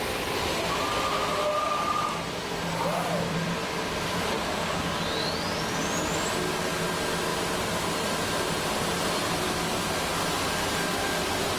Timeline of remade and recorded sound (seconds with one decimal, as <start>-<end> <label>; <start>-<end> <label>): 0.0-2.9 recorded; 2.9-4.8 remade; 4.8-7.3 recorded; 7.3-9.4 remade; 9.4-11.6 recorded